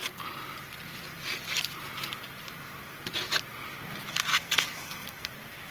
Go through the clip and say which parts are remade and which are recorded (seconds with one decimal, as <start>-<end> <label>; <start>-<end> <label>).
0.0-4.3 recorded; 4.3-5.3 remade; 5.3-5.7 recorded

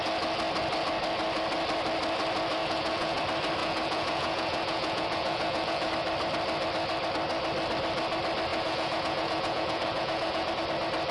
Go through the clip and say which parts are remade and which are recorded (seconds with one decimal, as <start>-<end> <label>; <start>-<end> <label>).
0.0-2.6 recorded; 2.6-3.2 remade; 3.2-3.6 recorded; 3.6-5.9 remade; 5.9-8.5 recorded; 8.5-10.5 remade; 10.5-11.1 recorded

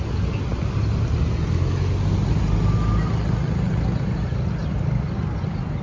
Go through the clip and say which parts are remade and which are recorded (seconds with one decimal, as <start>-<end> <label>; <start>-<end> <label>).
0.0-5.8 recorded

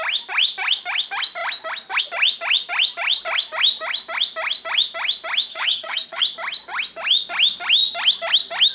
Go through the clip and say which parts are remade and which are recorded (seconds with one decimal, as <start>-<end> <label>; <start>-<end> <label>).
0.0-5.5 recorded; 5.5-6.2 remade; 6.2-8.7 recorded

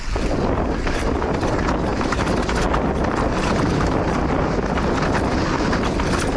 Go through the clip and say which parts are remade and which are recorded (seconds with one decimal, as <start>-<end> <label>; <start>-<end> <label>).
0.0-6.4 recorded

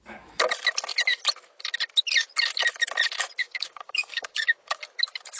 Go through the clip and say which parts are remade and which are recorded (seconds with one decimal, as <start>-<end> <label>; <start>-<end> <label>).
0.0-3.4 recorded; 3.4-4.8 remade; 4.8-5.4 recorded

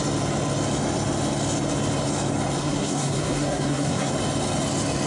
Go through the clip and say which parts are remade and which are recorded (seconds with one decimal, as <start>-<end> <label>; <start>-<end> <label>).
0.0-2.6 recorded; 2.6-4.1 remade; 4.1-5.1 recorded

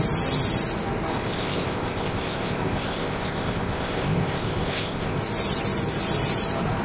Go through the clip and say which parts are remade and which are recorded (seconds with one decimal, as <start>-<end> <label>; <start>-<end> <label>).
0.0-1.1 recorded; 1.1-5.2 remade; 5.2-6.8 recorded